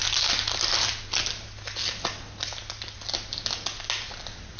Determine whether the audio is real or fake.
real